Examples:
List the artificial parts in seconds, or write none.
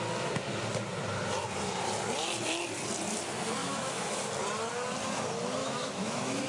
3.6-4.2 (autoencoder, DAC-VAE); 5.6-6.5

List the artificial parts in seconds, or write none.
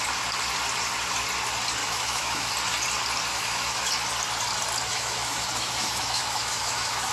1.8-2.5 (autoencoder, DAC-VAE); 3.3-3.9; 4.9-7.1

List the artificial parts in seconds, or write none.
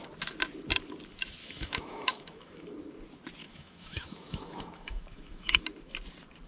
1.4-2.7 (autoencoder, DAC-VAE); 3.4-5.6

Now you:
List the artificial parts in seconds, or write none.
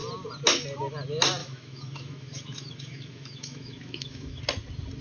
1.4-4.4 (autoencoder, DAC-VAE)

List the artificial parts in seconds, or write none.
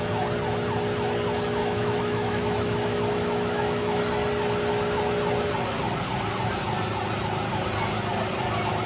1.6-4.0 (autoencoder, DAC-VAE)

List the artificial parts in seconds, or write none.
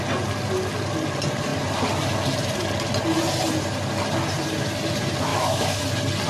5.3-5.8 (autoencoder, DAC-VAE)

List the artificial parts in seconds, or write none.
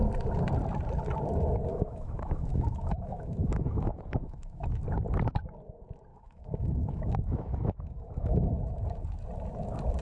1.7-4.6 (autoencoder, DAC-VAE); 6.1-8.6